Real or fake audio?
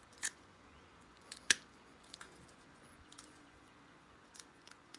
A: fake